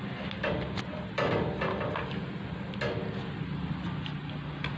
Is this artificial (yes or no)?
no